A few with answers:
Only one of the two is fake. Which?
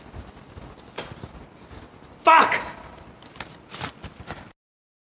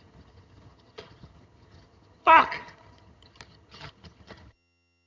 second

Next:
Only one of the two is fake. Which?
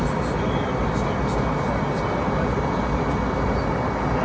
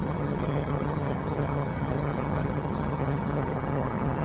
second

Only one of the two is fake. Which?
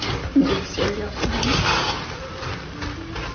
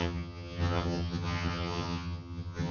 second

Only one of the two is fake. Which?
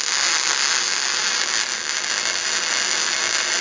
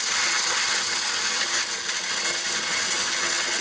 second